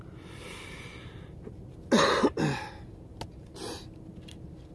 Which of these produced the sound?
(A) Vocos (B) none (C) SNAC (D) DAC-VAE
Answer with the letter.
B